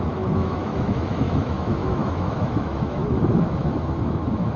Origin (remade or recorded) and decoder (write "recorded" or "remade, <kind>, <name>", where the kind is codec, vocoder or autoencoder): remade, autoencoder, DAC-VAE